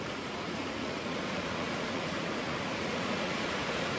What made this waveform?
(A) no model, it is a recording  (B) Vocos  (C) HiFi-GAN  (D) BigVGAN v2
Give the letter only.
B